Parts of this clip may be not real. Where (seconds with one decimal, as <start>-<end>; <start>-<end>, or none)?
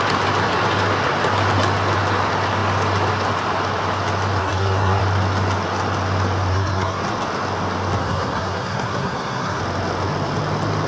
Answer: 4.4-5.0; 6.5-7.0; 8.0-9.6